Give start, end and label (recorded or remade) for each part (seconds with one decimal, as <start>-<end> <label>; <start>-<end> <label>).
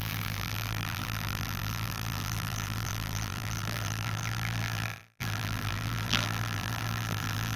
0.0-7.6 remade